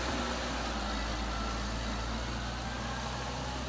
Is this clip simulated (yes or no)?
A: no